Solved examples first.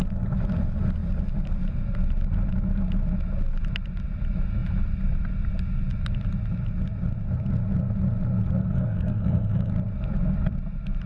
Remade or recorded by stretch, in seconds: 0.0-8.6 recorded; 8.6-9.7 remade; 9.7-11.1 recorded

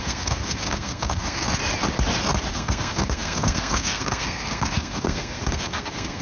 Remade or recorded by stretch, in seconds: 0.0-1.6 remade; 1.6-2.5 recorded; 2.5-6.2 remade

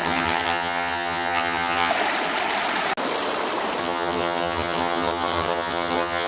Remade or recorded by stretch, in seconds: 0.0-1.9 remade; 1.9-3.8 recorded; 3.8-6.3 remade

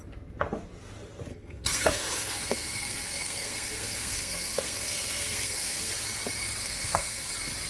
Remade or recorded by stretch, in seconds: 0.0-1.3 recorded; 1.3-5.9 remade; 5.9-6.6 recorded; 6.6-7.3 remade; 7.3-7.7 recorded

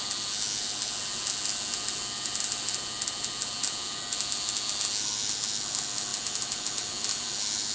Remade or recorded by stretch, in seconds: 0.0-7.7 recorded

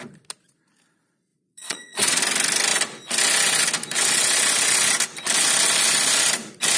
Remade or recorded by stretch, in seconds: 0.0-1.3 recorded; 1.3-2.2 remade; 2.2-6.8 recorded

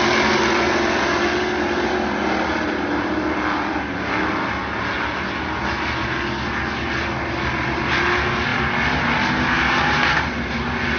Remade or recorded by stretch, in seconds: 0.0-11.0 recorded